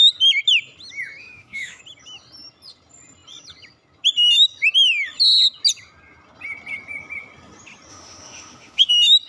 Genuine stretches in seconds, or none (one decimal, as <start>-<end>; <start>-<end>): 0.0-1.2; 1.8-7.9; 8.9-9.3